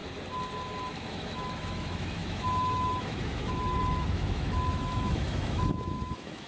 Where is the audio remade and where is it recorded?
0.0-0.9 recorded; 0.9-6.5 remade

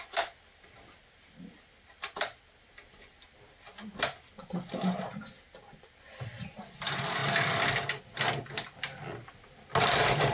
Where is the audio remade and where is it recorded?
0.0-10.3 recorded

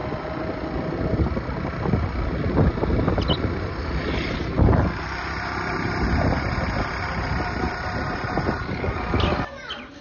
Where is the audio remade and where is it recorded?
0.0-10.0 recorded

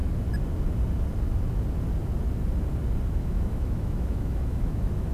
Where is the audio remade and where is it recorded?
0.0-3.1 recorded; 3.1-5.1 remade

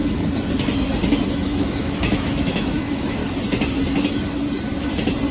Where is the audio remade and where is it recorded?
0.0-1.3 recorded; 1.3-3.2 remade; 3.2-5.3 recorded